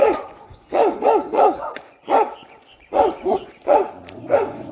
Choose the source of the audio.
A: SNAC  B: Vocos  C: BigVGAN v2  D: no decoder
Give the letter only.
B